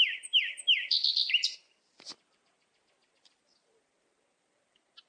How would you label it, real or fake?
real